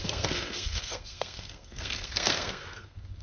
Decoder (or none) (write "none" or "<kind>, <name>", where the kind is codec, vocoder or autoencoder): codec, SNAC